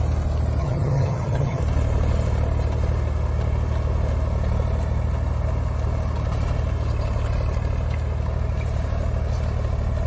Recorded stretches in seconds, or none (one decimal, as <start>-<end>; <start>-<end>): 0.0-0.6; 1.6-10.1